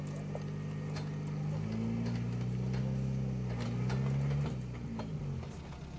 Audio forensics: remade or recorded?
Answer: recorded